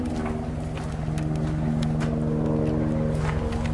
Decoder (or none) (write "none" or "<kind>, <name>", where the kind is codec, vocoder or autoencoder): none